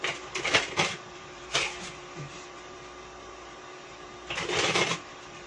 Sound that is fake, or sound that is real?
fake